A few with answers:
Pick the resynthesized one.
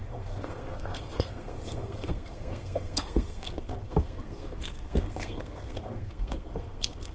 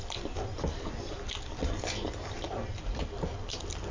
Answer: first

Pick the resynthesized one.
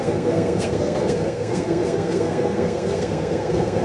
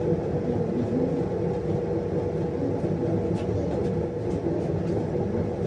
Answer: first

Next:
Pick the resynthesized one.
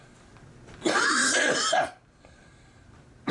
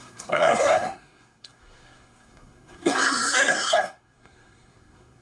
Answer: second